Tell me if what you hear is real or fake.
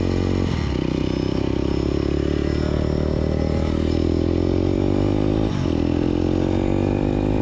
real